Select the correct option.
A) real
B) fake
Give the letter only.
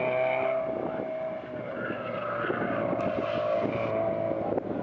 A